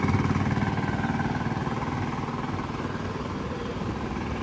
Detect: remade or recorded recorded